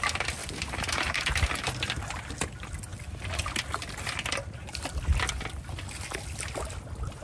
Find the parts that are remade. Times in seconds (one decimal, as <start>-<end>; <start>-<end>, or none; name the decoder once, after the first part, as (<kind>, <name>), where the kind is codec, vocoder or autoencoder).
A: 0.4-1.3 (vocoder, BigVGAN v2)